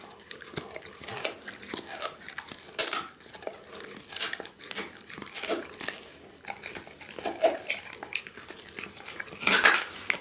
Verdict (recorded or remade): recorded